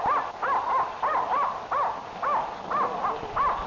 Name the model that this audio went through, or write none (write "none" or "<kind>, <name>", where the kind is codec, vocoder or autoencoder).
none